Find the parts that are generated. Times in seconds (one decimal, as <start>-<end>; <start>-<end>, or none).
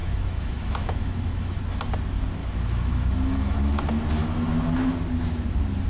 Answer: 0.0-1.6; 2.4-3.8